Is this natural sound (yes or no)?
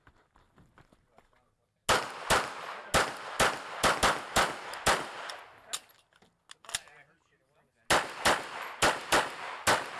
yes